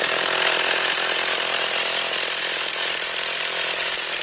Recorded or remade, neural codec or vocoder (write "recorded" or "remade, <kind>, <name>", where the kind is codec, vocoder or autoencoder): recorded